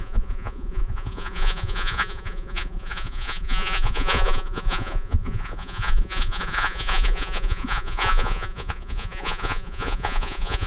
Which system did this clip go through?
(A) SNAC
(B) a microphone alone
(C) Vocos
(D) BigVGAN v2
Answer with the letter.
C